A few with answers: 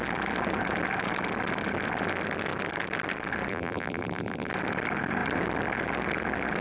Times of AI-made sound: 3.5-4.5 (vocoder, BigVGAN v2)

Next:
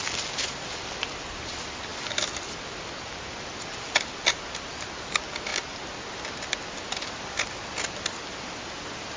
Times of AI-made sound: none

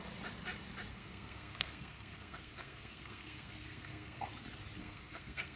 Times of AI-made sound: 0.9-4.3 (codec, SNAC); 4.8-5.6